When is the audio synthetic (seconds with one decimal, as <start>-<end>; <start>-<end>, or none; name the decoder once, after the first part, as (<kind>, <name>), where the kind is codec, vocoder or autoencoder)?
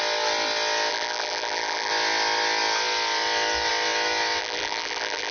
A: 0.9-1.9 (vocoder, BigVGAN v2); 4.4-5.3